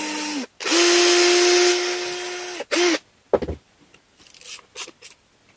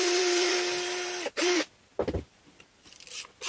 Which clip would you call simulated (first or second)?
second